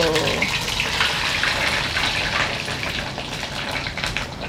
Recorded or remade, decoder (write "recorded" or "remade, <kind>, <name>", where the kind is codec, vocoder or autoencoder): recorded